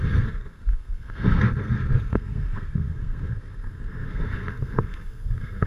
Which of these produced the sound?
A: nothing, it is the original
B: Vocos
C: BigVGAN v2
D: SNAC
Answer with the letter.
D